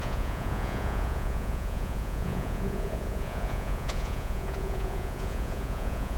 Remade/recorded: remade